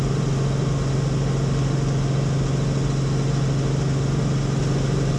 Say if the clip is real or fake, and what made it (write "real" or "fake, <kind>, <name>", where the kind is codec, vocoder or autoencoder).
real